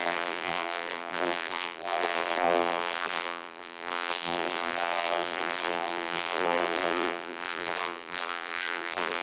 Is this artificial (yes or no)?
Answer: yes